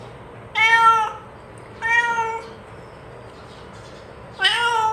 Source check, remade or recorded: recorded